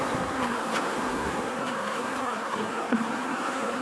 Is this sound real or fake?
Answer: fake